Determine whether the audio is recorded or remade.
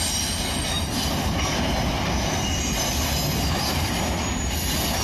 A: recorded